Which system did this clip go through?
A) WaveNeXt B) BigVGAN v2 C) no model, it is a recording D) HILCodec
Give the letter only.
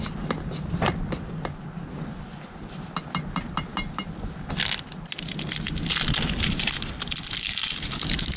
C